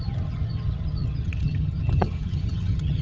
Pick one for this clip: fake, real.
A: fake